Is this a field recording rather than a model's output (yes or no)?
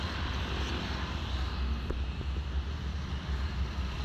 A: yes